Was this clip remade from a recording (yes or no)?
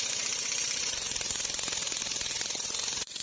yes